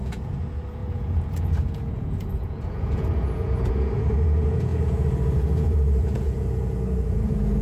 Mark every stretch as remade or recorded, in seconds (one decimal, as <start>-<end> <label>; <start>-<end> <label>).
0.0-7.6 remade